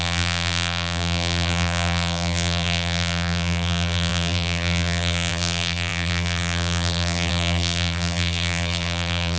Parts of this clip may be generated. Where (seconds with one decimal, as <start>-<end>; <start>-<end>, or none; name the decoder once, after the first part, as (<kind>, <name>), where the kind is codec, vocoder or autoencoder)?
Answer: 0.0-9.4 (vocoder, BigVGAN v2)